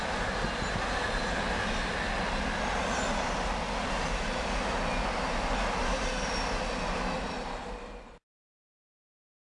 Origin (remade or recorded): recorded